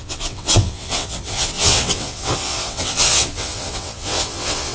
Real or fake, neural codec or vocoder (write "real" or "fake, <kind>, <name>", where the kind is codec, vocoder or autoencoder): fake, vocoder, WaveNeXt